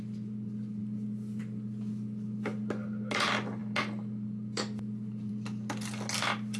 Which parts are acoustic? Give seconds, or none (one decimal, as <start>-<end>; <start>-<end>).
0.0-6.6